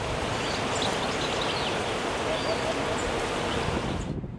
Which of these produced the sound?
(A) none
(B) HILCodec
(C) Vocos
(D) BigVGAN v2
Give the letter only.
A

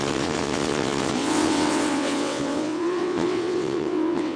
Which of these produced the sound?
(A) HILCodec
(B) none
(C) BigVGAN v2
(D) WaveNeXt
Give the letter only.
D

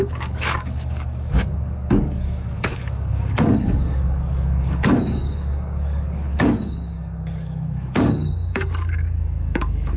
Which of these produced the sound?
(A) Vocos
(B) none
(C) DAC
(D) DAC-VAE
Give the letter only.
C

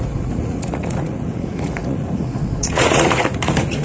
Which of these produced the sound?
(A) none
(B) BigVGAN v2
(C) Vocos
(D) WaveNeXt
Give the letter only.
C